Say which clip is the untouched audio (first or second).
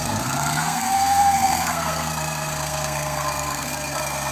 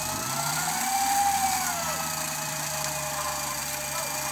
second